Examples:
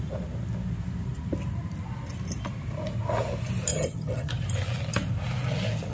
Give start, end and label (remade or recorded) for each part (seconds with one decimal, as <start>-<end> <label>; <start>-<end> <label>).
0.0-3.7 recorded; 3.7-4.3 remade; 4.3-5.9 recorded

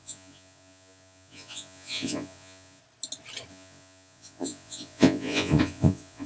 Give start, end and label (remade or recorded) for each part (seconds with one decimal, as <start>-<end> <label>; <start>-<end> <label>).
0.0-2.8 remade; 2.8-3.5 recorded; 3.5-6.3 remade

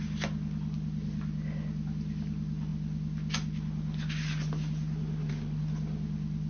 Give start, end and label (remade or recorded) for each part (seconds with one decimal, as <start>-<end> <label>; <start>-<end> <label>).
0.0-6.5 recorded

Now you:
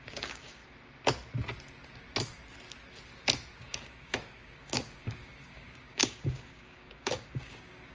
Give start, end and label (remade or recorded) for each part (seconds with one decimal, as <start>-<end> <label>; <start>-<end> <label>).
0.0-0.6 remade; 0.6-3.6 recorded; 3.6-7.9 remade